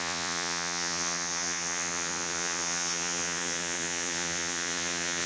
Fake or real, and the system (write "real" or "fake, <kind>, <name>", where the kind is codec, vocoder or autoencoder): fake, vocoder, Vocos